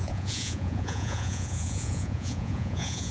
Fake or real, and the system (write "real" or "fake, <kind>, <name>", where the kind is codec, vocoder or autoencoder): fake, vocoder, Vocos